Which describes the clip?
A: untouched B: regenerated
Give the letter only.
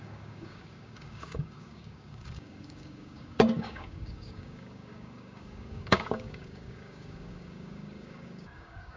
B